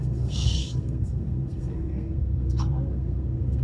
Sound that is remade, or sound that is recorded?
remade